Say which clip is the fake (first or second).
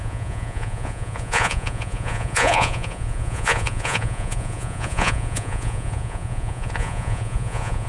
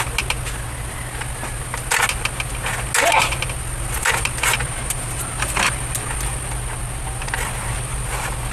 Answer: first